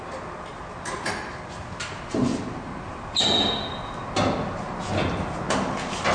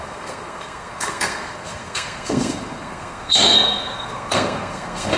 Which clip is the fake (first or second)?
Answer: second